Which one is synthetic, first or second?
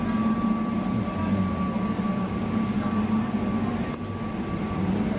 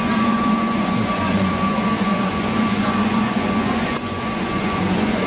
second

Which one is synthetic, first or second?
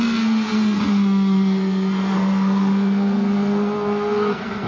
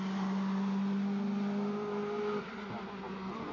first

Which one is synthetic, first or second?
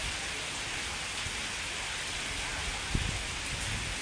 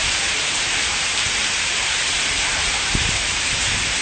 second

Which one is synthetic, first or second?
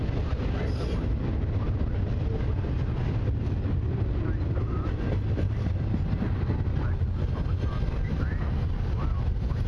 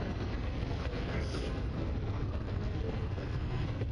second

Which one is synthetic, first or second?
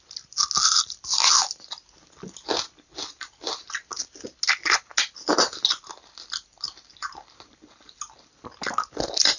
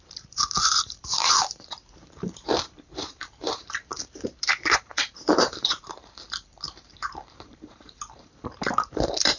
second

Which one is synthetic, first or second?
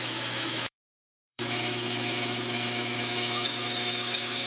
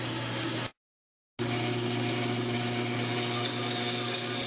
first